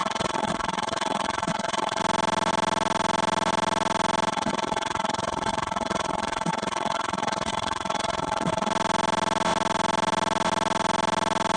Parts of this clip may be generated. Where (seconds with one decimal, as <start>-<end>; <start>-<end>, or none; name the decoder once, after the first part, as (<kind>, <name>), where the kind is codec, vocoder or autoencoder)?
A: 0.0-2.0 (codec, SNAC); 4.3-8.7